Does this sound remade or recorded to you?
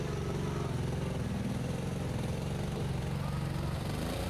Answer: recorded